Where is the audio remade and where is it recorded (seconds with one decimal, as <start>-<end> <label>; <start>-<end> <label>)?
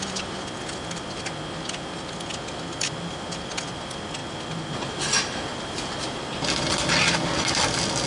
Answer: 0.0-8.1 recorded